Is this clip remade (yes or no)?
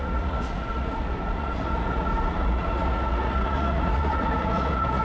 yes